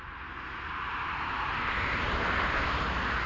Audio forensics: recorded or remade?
recorded